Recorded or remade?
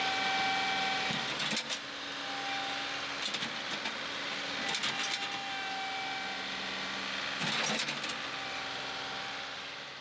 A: recorded